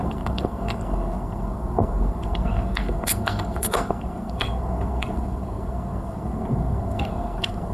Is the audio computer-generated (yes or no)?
yes